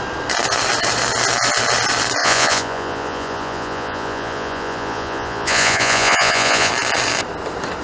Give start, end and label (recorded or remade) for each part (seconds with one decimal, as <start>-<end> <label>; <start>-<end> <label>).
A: 0.0-2.2 recorded; 2.2-6.7 remade; 6.7-7.8 recorded